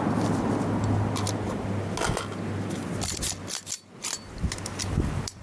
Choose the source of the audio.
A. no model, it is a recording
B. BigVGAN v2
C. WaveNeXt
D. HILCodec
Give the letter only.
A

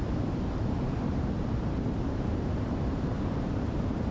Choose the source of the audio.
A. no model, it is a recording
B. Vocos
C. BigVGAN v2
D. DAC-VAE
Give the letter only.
C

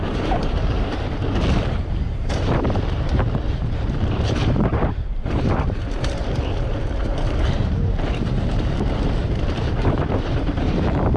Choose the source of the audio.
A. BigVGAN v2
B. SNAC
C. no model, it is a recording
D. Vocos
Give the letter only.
A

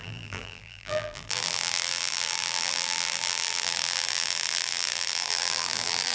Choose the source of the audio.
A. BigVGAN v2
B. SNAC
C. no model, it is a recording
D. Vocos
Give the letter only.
A